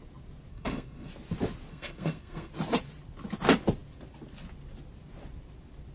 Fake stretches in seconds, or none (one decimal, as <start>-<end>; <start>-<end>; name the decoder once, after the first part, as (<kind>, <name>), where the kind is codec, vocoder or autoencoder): 0.5-1.1 (codec, SNAC); 1.7-2.5